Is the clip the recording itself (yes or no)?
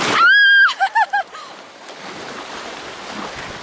yes